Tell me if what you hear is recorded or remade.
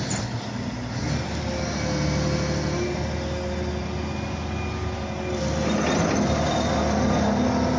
recorded